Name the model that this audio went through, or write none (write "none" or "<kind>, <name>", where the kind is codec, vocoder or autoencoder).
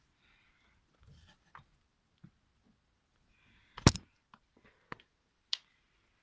none